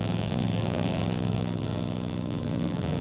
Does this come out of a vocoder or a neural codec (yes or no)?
yes